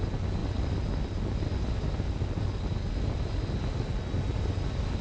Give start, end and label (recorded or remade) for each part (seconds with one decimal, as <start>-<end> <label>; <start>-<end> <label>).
0.0-5.0 recorded